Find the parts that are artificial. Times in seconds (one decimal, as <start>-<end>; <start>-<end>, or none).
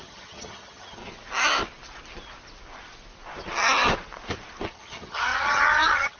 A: 0.0-1.0; 4.7-6.2